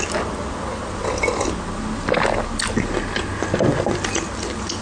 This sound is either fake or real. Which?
real